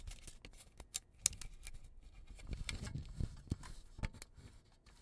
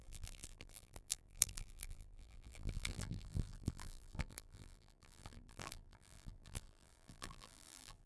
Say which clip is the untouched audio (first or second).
first